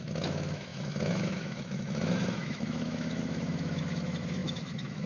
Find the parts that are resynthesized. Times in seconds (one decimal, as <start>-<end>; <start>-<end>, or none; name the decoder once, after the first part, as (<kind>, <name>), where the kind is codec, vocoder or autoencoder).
0.0-5.1 (autoencoder, DAC-VAE)